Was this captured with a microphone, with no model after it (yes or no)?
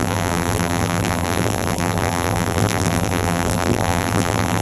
no